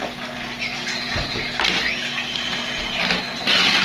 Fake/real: real